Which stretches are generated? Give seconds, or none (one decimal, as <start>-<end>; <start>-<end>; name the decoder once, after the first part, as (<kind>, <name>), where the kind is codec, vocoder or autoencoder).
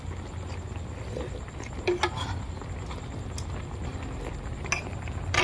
none